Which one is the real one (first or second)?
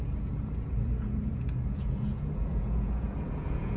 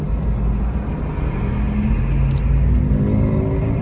second